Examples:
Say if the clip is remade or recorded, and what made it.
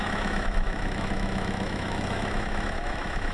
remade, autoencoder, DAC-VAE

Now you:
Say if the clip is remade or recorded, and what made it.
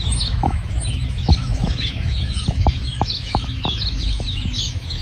remade, autoencoder, DAC-VAE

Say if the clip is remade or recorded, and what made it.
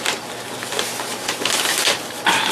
recorded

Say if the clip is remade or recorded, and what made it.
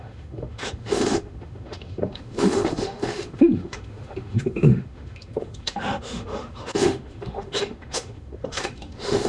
remade, autoencoder, DAC-VAE